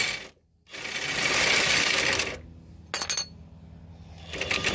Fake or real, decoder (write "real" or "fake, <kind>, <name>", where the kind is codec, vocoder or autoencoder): real